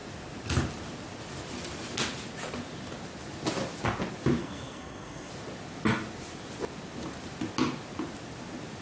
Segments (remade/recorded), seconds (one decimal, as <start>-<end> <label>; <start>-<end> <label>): 0.0-4.4 recorded; 4.4-5.3 remade; 5.3-8.8 recorded